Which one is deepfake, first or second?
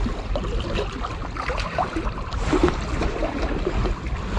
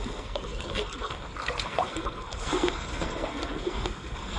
second